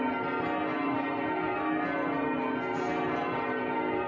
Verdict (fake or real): real